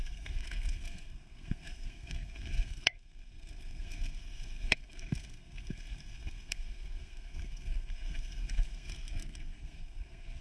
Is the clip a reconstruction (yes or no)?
yes